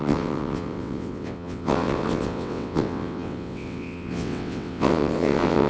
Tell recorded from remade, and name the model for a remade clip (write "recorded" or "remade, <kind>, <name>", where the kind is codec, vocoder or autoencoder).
remade, vocoder, WaveNeXt